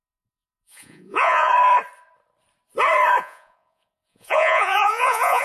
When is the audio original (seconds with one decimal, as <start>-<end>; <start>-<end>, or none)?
1.5-3.2